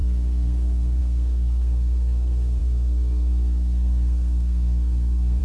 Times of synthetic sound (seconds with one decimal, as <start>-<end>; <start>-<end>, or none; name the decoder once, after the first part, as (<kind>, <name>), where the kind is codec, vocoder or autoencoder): 0.0-5.4 (codec, SNAC)